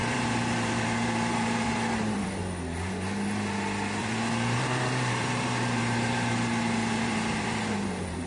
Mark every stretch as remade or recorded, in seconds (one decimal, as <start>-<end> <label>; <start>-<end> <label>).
0.0-2.4 remade; 2.4-4.0 recorded; 4.0-8.3 remade